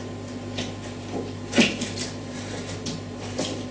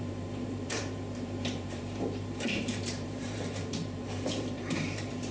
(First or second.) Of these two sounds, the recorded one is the first